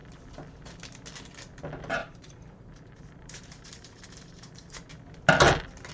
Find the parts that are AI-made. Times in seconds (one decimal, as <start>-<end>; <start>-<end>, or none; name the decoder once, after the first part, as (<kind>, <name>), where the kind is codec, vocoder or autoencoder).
2.0-4.9 (vocoder, BigVGAN v2)